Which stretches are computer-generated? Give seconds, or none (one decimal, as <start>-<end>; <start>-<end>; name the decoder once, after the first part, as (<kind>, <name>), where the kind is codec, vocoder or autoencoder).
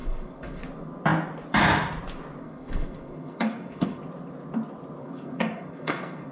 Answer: 0.0-0.6 (codec, SNAC); 2.4-4.0; 5.0-6.3